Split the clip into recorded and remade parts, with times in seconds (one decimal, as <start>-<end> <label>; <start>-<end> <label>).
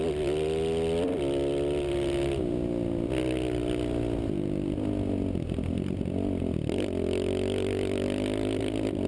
0.0-9.1 recorded